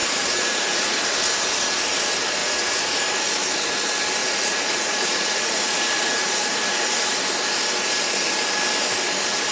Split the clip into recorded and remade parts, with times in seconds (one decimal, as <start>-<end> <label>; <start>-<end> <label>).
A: 0.0-1.0 remade; 1.0-2.4 recorded; 2.4-3.0 remade; 3.0-4.2 recorded; 4.2-7.2 remade; 7.2-9.5 recorded